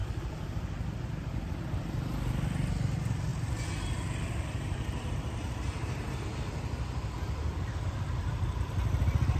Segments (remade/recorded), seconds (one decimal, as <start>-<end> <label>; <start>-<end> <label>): 0.0-9.4 remade